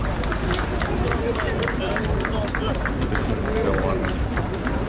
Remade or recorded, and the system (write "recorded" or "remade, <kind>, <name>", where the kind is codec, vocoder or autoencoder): recorded